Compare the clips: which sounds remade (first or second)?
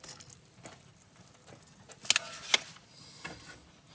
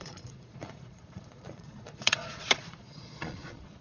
second